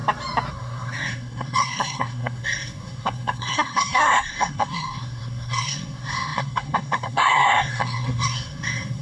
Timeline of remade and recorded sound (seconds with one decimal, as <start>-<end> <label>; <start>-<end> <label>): 0.0-0.5 recorded; 0.5-9.0 remade